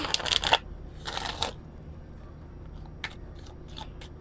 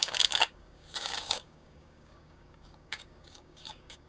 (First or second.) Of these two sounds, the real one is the first